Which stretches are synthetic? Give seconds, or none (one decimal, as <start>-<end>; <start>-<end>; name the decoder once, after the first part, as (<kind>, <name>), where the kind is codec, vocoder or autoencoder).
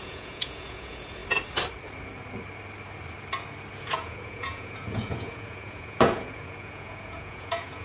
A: 0.0-1.2 (vocoder, Vocos); 3.8-7.8